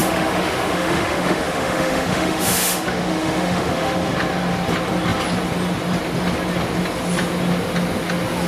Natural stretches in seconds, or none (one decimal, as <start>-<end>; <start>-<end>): 4.1-8.5